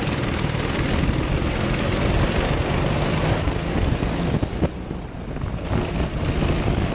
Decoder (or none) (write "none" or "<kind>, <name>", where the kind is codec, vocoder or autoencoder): none